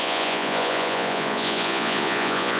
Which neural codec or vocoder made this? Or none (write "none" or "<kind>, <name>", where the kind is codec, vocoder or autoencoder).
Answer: vocoder, Vocos